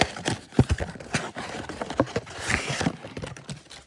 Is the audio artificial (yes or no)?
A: no